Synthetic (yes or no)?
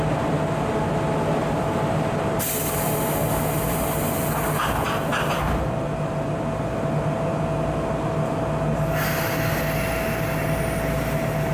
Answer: no